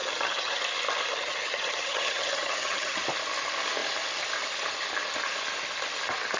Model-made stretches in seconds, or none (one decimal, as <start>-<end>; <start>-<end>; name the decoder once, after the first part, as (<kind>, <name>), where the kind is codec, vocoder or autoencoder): 0.0-0.6 (vocoder, HiFi-GAN); 1.1-3.0

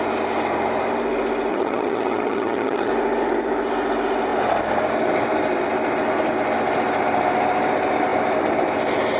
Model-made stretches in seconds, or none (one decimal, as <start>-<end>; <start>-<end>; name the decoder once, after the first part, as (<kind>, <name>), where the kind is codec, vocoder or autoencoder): 1.5-2.9 (vocoder, HiFi-GAN)

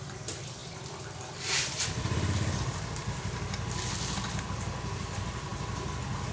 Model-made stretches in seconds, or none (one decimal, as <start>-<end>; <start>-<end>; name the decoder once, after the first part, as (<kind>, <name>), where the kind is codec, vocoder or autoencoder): none

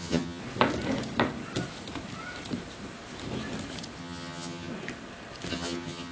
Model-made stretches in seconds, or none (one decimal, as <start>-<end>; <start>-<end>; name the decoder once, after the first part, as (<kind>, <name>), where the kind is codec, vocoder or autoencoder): 0.0-0.4 (vocoder, HiFi-GAN); 4.0-4.7; 5.5-6.1

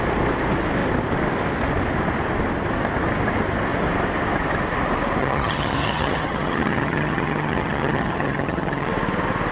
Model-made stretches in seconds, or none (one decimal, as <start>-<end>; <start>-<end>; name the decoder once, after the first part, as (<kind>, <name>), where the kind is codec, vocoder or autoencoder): 5.2-8.9 (vocoder, HiFi-GAN)

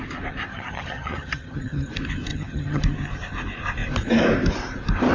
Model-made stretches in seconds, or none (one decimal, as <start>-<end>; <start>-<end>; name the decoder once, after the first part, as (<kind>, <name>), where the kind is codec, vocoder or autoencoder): 0.5-1.9 (vocoder, HiFi-GAN); 2.3-2.8